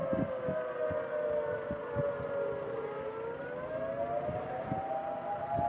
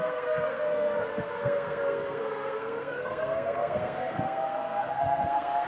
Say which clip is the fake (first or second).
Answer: second